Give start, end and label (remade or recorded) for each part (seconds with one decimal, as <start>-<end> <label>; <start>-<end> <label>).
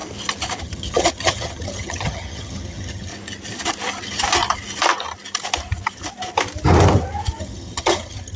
0.0-0.6 recorded; 0.6-3.1 remade; 3.1-7.4 recorded; 7.4-8.4 remade